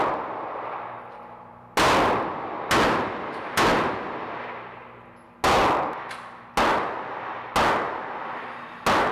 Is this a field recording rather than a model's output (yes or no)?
yes